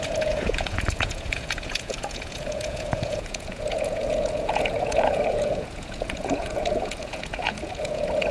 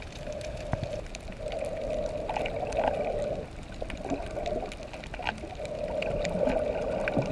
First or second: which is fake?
first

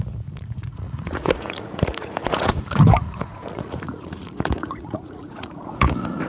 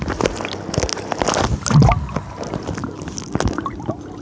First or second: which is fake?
first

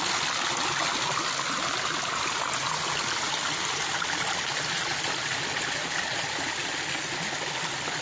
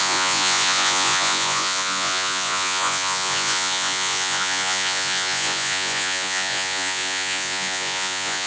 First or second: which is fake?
second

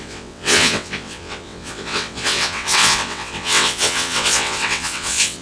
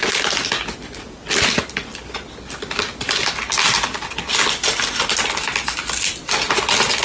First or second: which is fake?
first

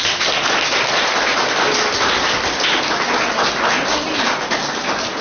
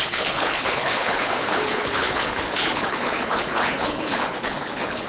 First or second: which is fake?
second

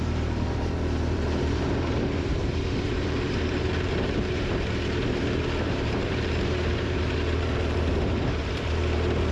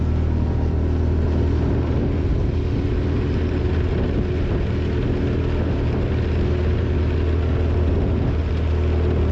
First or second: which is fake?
first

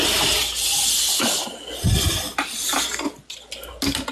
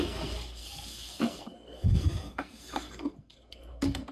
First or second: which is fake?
second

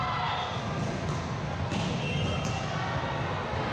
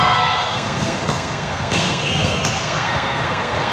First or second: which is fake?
second